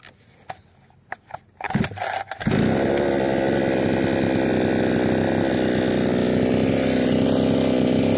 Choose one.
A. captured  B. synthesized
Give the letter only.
A